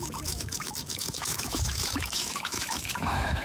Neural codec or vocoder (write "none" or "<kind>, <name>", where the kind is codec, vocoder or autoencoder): autoencoder, DAC-VAE